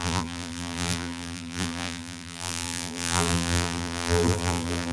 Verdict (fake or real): fake